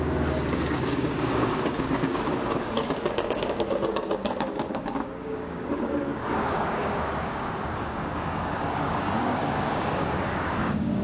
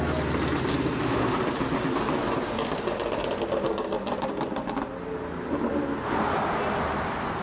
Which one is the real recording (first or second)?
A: second